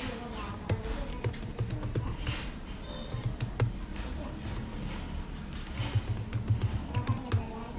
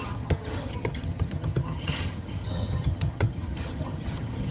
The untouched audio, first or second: first